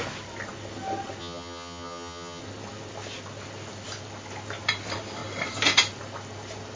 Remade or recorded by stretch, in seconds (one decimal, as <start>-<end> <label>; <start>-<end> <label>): 0.0-1.2 recorded; 1.2-2.4 remade; 2.4-6.8 recorded